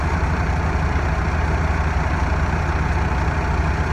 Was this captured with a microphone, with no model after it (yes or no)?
yes